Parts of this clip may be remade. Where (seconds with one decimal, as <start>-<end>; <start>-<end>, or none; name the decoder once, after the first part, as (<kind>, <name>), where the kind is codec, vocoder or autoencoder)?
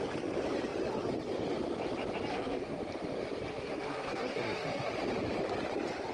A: 2.3-2.8 (codec, SNAC); 3.5-4.9